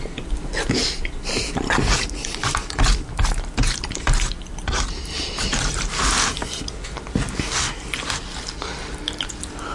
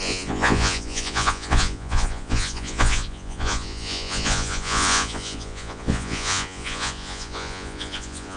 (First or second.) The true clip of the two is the first